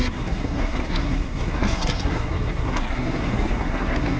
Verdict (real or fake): fake